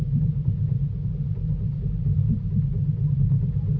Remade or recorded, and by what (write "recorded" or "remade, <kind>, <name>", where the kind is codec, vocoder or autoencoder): recorded